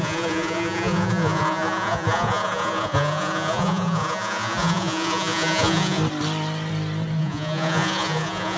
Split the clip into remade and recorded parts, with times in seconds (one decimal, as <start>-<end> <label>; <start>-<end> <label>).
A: 0.0-6.0 remade; 6.0-7.2 recorded; 7.2-8.6 remade